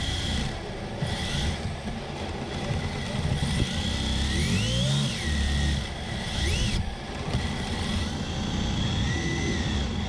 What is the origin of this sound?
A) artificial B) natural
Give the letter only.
B